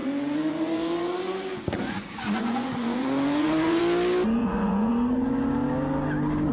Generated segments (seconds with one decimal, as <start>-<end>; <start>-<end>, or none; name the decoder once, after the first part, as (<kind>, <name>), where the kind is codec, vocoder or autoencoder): 0.0-3.8 (vocoder, Vocos); 4.4-4.9